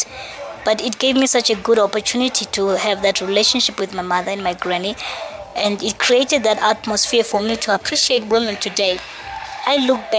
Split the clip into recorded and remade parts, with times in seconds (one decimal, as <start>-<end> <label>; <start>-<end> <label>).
0.0-7.3 recorded; 7.3-10.2 remade